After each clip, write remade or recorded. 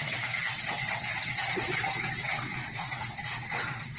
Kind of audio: remade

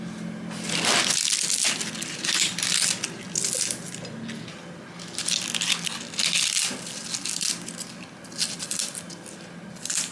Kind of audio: recorded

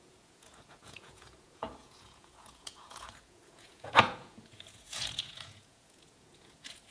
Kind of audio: remade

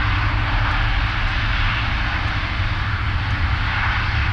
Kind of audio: recorded